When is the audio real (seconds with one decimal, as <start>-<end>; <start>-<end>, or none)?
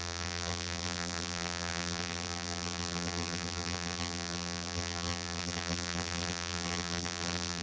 none